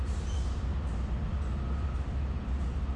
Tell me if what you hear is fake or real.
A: real